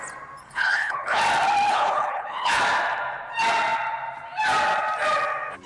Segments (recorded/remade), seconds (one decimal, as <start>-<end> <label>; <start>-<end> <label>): 0.0-0.4 recorded; 0.4-1.2 remade; 1.2-1.7 recorded; 1.7-2.6 remade; 2.6-5.7 recorded